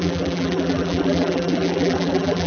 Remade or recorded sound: remade